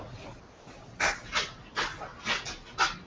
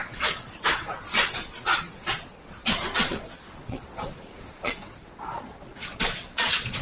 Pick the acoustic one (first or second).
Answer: first